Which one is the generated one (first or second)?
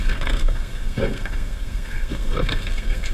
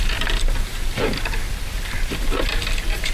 first